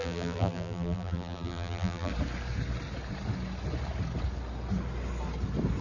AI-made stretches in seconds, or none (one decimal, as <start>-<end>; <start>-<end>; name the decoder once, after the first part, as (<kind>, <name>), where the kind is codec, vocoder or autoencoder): 0.0-2.1 (vocoder, BigVGAN v2)